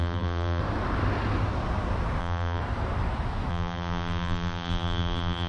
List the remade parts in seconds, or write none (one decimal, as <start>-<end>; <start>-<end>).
0.0-0.6; 2.2-2.6; 3.5-5.5

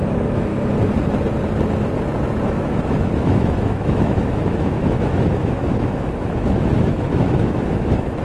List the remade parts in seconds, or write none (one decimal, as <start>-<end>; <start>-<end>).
0.0-0.5; 2.4-8.2

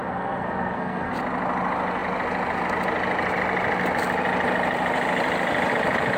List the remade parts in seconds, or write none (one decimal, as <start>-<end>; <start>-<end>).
0.0-1.1

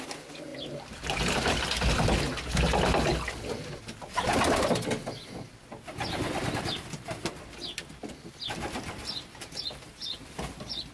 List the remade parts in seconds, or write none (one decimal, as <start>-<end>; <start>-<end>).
0.5-2.2; 3.1-4.0